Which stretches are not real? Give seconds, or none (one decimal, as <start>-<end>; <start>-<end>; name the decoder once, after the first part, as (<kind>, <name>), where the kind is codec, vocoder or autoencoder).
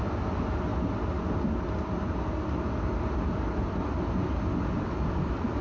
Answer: none